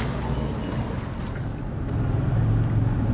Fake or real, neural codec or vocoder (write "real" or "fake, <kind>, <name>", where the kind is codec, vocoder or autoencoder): real